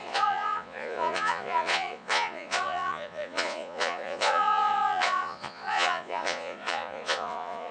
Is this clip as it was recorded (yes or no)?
no